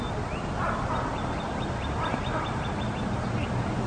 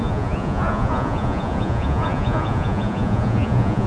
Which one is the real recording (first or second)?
first